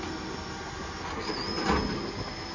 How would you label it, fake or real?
real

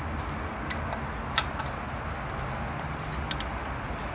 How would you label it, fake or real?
real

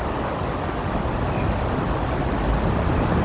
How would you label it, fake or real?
real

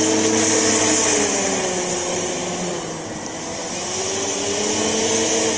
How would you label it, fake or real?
real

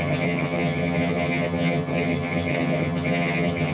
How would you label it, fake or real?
fake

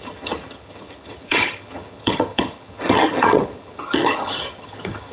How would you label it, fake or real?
fake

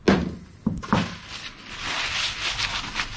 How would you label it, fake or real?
real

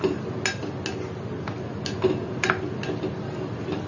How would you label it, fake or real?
real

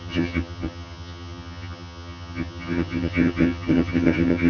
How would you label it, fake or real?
fake